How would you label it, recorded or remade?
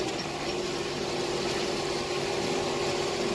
recorded